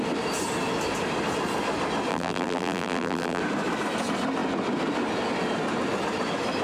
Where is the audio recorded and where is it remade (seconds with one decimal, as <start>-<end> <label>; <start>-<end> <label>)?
0.0-2.1 recorded; 2.1-3.4 remade; 3.4-6.6 recorded